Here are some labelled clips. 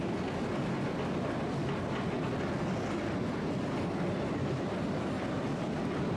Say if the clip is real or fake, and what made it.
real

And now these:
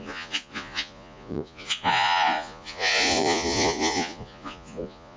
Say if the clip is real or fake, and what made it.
fake, vocoder, Vocos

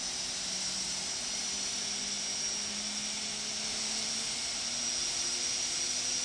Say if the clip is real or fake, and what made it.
real